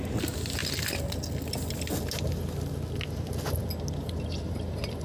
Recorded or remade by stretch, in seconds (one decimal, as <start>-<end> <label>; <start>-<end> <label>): 0.0-5.0 recorded